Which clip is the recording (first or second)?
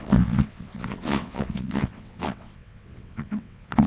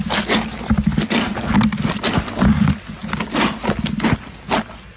second